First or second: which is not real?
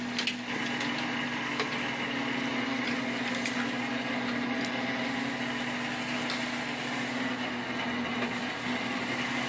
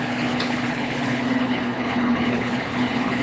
second